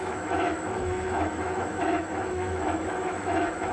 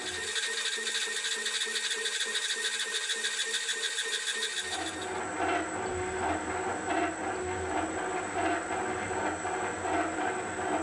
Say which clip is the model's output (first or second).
first